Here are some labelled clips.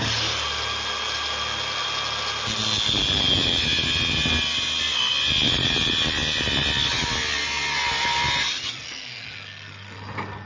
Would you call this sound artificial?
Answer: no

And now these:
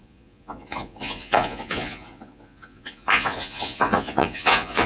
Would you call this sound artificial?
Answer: yes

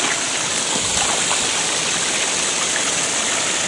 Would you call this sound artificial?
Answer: no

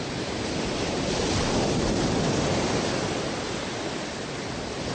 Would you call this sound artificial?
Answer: no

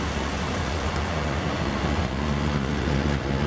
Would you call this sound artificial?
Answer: yes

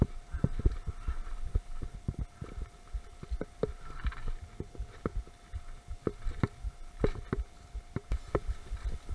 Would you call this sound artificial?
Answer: no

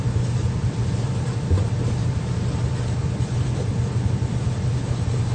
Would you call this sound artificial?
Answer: no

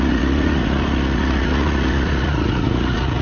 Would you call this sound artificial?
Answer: yes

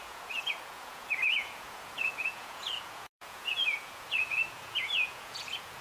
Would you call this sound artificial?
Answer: yes